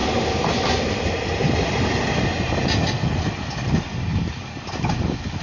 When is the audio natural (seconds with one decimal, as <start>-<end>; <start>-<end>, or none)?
0.0-5.4